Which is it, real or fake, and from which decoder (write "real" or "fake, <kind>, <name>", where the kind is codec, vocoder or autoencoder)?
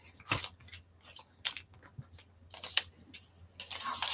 real